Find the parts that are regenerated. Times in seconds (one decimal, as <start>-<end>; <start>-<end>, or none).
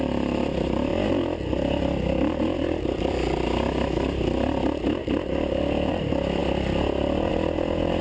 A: none